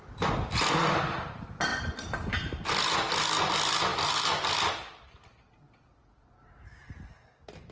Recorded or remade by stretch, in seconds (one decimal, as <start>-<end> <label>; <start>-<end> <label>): 0.0-7.7 recorded